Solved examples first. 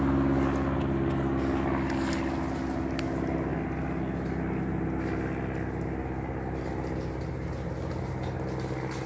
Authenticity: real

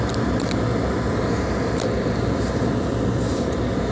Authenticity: real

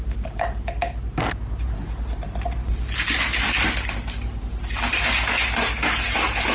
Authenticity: real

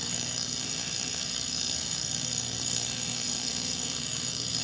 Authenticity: fake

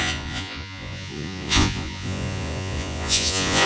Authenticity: fake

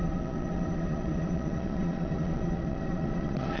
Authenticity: fake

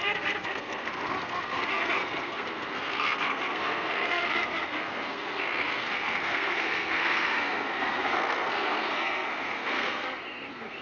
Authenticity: fake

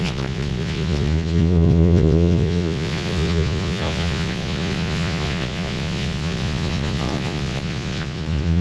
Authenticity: fake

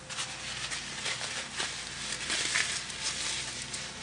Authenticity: real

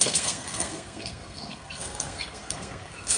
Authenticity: fake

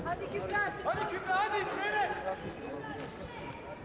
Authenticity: real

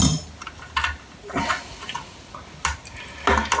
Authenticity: real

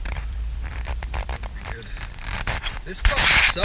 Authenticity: fake